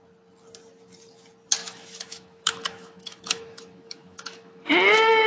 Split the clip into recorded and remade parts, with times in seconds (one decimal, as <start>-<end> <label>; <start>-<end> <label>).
0.0-1.6 recorded; 1.6-4.7 remade; 4.7-5.3 recorded